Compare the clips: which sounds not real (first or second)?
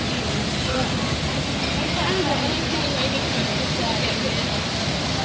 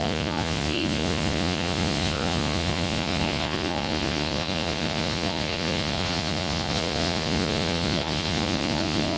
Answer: second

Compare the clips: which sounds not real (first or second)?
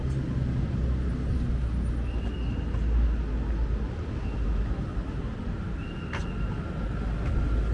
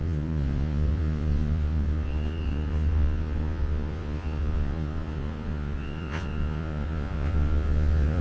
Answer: second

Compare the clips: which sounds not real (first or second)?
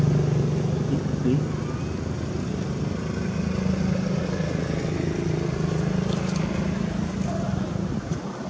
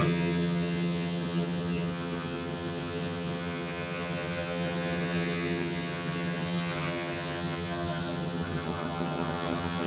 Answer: second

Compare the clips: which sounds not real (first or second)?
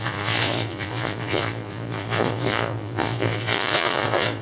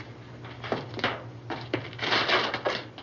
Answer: first